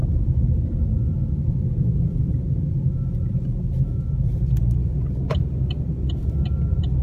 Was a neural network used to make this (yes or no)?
yes